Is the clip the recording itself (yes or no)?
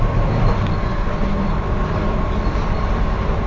no